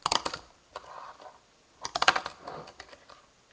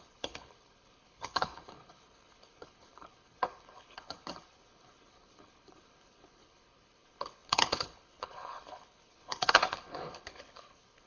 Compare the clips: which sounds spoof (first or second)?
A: second